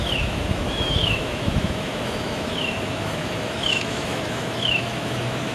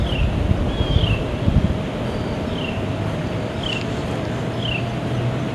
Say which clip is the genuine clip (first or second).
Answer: second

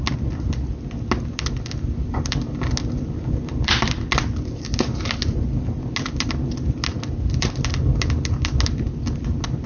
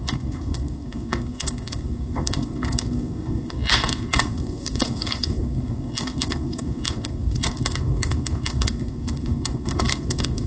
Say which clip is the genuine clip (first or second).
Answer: first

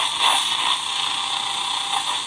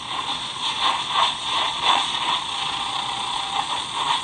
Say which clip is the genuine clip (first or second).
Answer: first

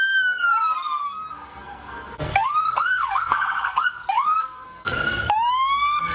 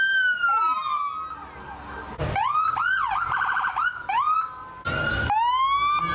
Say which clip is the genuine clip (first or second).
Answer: second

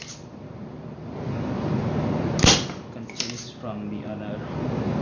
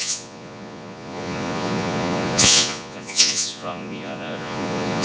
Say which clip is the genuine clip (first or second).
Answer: first